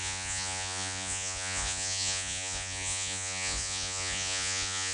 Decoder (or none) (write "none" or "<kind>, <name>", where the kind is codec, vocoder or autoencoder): vocoder, Vocos